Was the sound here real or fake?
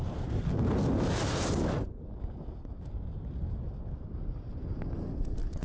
real